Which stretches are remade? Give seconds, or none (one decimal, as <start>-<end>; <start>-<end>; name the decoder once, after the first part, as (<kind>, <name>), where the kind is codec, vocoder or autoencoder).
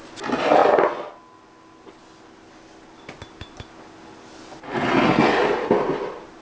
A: none